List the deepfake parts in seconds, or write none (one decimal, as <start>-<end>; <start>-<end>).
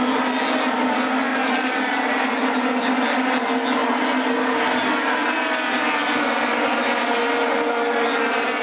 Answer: 1.3-2.1